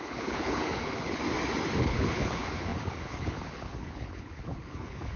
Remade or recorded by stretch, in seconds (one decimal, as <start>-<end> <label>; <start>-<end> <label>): 0.0-1.2 remade; 1.2-1.8 recorded; 1.8-5.2 remade